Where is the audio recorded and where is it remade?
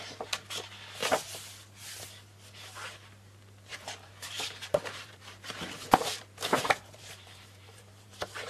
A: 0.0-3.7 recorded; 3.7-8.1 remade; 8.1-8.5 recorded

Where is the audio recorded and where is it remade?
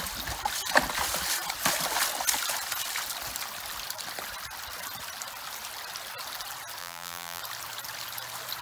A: 0.0-6.8 recorded; 6.8-7.4 remade; 7.4-8.6 recorded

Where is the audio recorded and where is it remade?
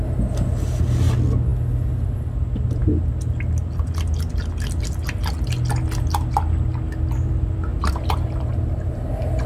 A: 0.0-7.7 recorded; 7.7-9.5 remade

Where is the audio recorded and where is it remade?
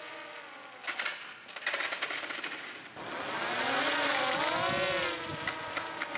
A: 0.0-5.3 recorded; 5.3-6.2 remade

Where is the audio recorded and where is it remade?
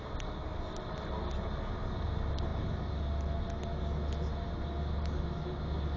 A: 0.0-6.0 recorded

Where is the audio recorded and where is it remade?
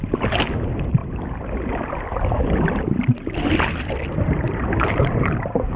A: 0.0-1.0 remade; 1.0-4.2 recorded; 4.2-5.8 remade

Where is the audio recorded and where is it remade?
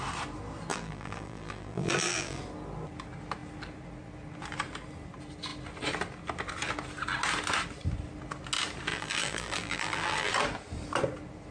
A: 0.0-0.7 recorded; 0.7-2.4 remade; 2.4-8.9 recorded; 8.9-10.3 remade; 10.3-11.5 recorded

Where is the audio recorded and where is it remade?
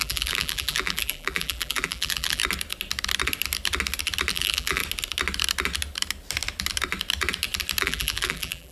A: 0.0-2.4 remade; 2.4-4.3 recorded; 4.3-4.8 remade; 4.8-7.8 recorded; 7.8-8.7 remade